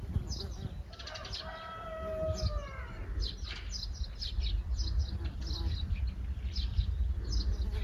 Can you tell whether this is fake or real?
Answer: real